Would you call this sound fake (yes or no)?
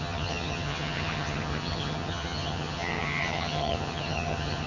yes